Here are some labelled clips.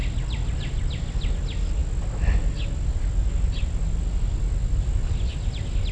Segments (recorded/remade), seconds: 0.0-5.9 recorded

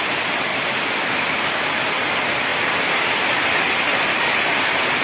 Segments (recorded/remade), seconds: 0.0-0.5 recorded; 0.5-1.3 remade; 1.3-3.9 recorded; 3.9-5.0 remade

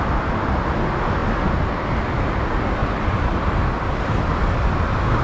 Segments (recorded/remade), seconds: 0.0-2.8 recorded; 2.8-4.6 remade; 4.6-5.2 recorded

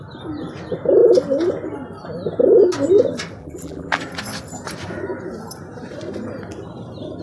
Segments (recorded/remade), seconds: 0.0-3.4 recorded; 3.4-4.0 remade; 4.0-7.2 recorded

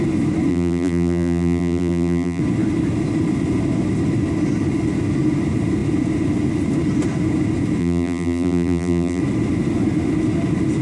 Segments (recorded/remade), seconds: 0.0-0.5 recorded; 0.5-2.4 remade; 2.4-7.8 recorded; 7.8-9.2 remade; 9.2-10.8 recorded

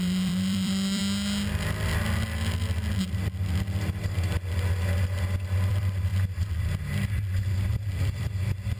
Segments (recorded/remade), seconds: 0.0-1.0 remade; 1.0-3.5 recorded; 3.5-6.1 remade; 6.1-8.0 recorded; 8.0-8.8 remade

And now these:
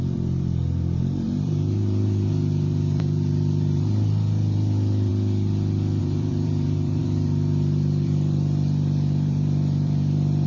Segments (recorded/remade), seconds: 0.0-5.1 remade; 5.1-6.0 recorded; 6.0-10.5 remade

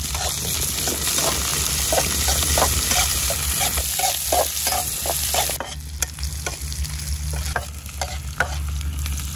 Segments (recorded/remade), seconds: 0.0-1.5 recorded; 1.5-3.3 remade; 3.3-4.8 recorded; 4.8-5.5 remade; 5.5-9.4 recorded